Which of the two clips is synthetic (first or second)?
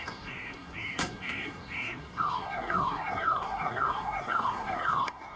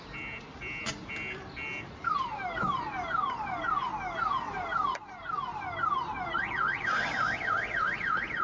first